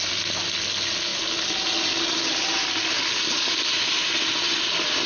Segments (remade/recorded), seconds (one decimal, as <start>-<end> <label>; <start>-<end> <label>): 0.0-5.1 recorded